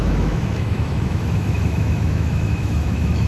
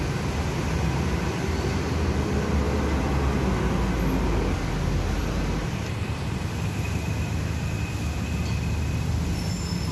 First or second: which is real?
second